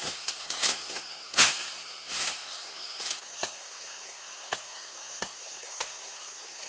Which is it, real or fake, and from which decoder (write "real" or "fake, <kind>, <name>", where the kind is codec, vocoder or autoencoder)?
fake, codec, SNAC